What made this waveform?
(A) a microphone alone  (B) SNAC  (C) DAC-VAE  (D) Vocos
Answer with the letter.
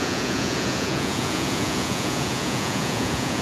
D